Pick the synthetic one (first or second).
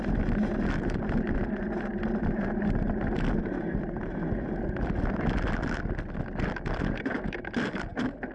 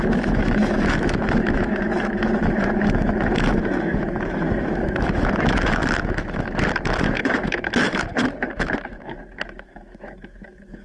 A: second